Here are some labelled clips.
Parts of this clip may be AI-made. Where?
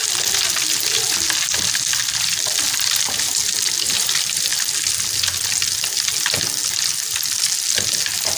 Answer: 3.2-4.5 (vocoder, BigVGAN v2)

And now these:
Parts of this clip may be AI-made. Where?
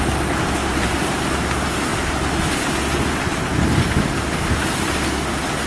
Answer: 0.6-1.2 (vocoder, BigVGAN v2); 1.9-2.6